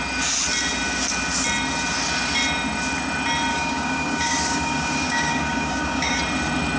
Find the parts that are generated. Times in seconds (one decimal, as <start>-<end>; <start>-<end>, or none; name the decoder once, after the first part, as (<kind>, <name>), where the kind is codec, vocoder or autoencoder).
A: 3.5-6.2 (codec, DAC)